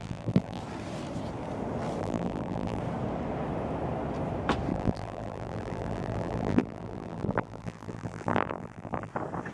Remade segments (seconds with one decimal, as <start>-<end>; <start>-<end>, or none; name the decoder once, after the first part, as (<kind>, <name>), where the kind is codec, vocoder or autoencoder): 0.0-0.6 (vocoder, BigVGAN v2); 2.0-2.8; 4.7-9.1